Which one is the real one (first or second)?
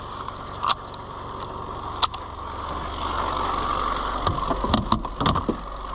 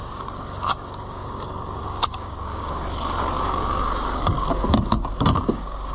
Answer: first